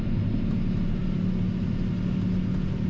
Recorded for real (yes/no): yes